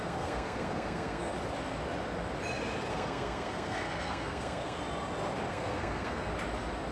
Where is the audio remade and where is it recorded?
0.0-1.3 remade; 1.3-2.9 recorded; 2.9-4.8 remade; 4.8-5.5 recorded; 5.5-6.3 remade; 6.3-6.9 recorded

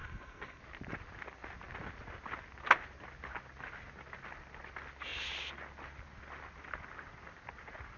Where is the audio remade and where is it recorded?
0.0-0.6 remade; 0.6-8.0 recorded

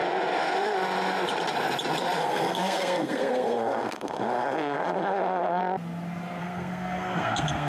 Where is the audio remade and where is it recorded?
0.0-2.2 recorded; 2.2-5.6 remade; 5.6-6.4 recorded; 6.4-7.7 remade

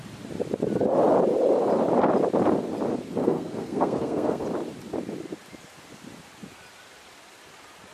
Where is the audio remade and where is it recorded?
0.0-3.2 recorded; 3.2-4.4 remade; 4.4-7.9 recorded

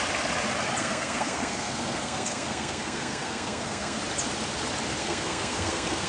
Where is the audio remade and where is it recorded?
0.0-0.8 recorded; 0.8-4.0 remade; 4.0-5.0 recorded; 5.0-6.1 remade